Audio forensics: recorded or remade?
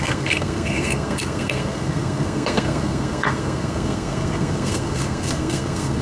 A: remade